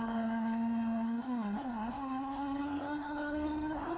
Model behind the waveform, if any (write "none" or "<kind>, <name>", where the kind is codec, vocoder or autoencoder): codec, SNAC